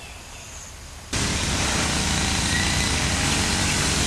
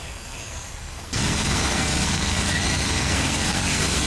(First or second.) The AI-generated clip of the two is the second